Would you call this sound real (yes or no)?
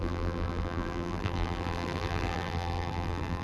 no